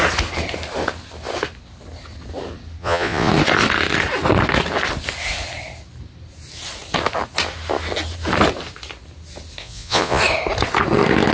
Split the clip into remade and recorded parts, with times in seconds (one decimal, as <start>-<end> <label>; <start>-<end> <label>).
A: 0.0-2.8 recorded; 2.8-3.3 remade; 3.3-9.6 recorded; 9.6-10.2 remade; 10.2-11.3 recorded

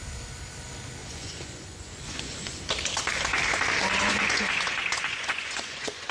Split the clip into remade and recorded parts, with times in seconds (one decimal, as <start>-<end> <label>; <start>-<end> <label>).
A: 0.0-1.0 recorded; 1.0-2.6 remade; 2.6-3.8 recorded; 3.8-6.1 remade